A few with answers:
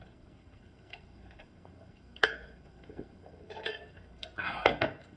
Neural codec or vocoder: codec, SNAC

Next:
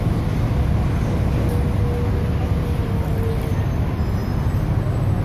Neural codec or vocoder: none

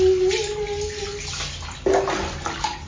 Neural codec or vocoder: none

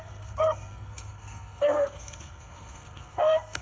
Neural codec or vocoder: codec, SNAC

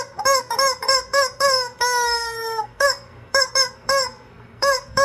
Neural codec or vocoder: codec, SNAC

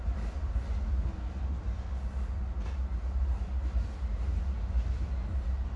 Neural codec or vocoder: none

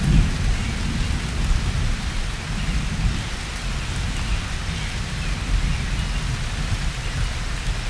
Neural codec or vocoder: none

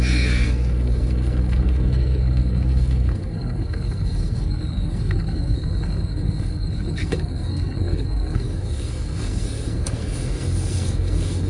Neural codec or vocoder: codec, SNAC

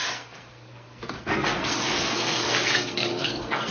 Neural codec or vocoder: codec, SNAC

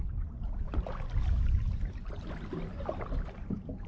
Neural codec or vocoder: none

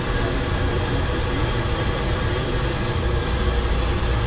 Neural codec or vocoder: none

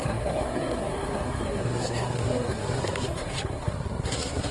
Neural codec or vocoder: codec, SNAC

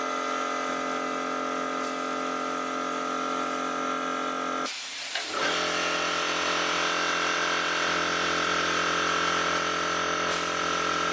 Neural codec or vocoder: none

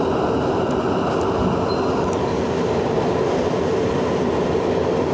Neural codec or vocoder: none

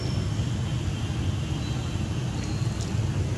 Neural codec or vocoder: none